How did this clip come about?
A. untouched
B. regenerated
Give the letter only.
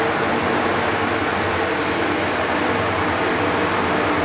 A